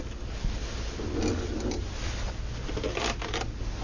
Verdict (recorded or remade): recorded